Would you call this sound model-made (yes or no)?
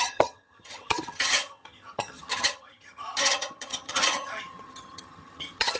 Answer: yes